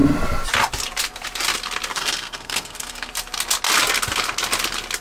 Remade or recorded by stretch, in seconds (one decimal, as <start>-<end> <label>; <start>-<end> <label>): 0.0-1.9 recorded; 1.9-3.1 remade; 3.1-5.0 recorded